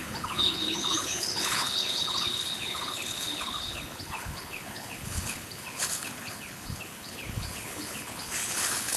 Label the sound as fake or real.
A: fake